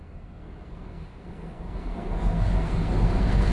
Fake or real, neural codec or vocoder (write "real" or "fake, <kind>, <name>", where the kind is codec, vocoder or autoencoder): fake, codec, SNAC